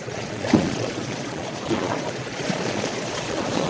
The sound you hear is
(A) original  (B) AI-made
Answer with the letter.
B